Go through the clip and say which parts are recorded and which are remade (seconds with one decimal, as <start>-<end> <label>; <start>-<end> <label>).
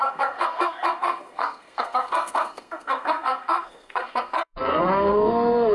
0.0-5.7 remade